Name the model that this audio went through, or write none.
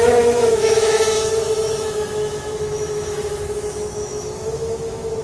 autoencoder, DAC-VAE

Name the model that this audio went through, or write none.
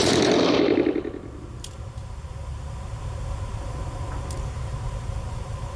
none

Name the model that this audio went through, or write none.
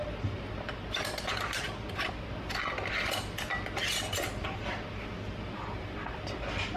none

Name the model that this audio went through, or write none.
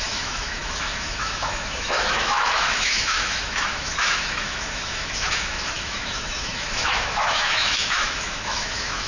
autoencoder, DAC-VAE